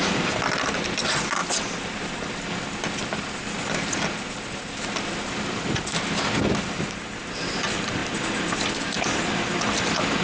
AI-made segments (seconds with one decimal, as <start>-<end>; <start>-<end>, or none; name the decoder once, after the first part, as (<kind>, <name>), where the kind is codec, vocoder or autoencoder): none